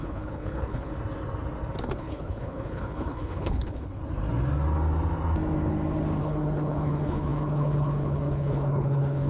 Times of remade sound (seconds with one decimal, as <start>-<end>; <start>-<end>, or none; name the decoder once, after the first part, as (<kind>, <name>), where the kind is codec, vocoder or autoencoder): 0.0-0.9 (codec, HILCodec); 1.8-4.0; 6.2-9.3